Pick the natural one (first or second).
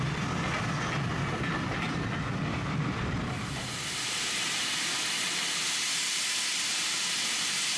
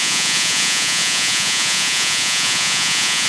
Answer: first